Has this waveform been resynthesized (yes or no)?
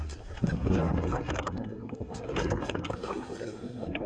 yes